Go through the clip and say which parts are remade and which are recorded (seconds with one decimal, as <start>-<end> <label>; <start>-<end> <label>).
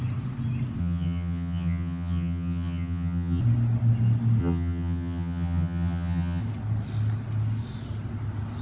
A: 0.0-0.8 recorded; 0.8-3.4 remade; 3.4-4.4 recorded; 4.4-6.4 remade; 6.4-8.6 recorded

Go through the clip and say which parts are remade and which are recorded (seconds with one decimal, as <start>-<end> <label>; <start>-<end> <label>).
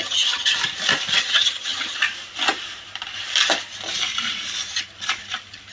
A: 0.0-0.6 remade; 0.6-1.1 recorded; 1.1-2.0 remade; 2.0-5.7 recorded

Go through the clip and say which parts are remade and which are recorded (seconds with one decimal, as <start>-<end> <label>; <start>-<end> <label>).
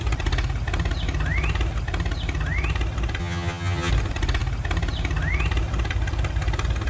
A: 0.0-3.2 recorded; 3.2-3.9 remade; 3.9-6.9 recorded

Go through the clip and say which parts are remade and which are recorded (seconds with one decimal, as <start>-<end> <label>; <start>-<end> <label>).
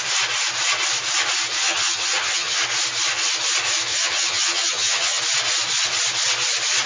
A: 0.0-1.5 recorded; 1.5-2.6 remade; 2.6-3.9 recorded; 3.9-5.2 remade; 5.2-6.9 recorded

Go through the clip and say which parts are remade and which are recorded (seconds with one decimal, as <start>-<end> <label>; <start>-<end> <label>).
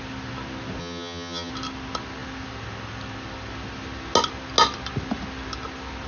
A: 0.0-0.8 recorded; 0.8-1.5 remade; 1.5-6.1 recorded